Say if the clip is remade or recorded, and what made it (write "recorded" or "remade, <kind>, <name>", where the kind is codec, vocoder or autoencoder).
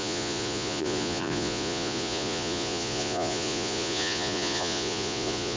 remade, vocoder, Vocos